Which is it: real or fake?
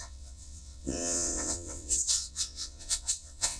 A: fake